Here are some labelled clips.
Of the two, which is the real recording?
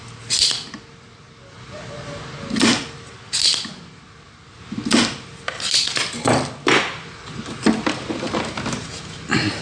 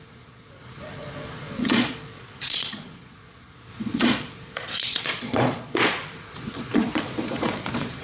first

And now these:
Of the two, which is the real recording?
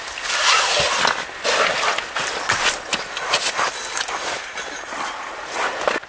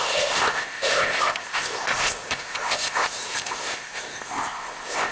first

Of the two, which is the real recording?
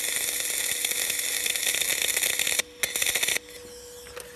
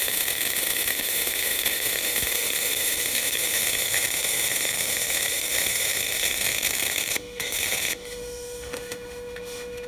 first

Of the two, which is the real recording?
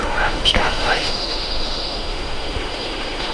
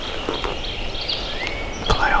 second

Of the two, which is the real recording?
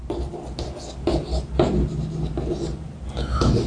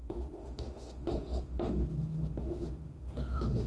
first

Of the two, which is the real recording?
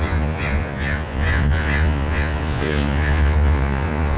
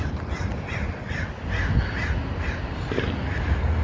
second